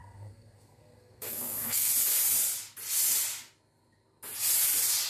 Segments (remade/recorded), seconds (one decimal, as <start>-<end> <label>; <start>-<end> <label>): 0.0-1.9 remade; 1.9-5.1 recorded

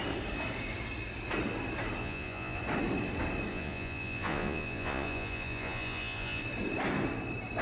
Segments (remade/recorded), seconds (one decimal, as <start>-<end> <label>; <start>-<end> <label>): 0.0-2.0 recorded; 2.0-2.6 remade; 2.6-3.5 recorded; 3.5-6.4 remade; 6.4-7.6 recorded